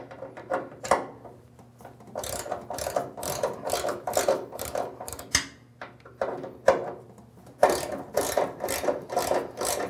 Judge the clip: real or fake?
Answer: real